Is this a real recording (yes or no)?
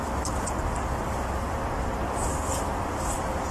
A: yes